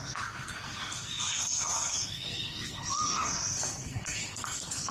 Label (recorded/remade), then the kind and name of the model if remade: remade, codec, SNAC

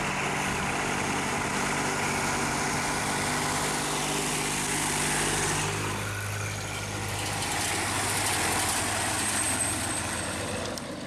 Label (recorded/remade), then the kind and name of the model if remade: recorded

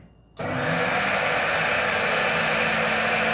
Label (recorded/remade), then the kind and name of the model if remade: recorded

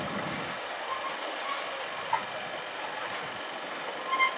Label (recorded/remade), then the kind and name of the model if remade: recorded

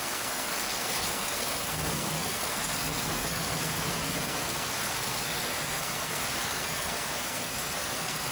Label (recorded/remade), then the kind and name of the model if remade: remade, codec, SNAC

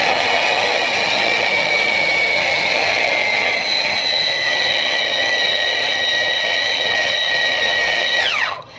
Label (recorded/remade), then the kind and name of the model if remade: remade, vocoder, HiFi-GAN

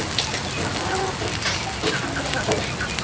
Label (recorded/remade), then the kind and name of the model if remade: recorded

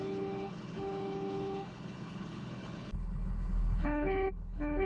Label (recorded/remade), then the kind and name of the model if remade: remade, codec, HILCodec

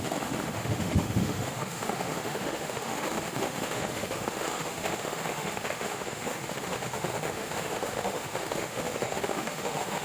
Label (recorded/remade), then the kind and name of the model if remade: remade, autoencoder, DAC-VAE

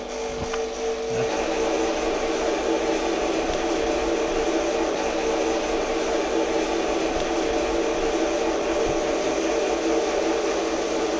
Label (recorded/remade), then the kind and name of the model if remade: recorded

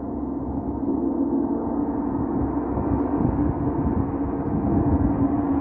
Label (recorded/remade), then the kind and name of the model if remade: recorded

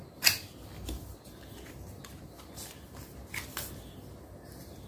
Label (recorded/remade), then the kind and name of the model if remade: recorded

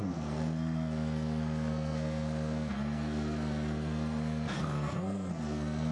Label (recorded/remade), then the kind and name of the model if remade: remade, codec, SNAC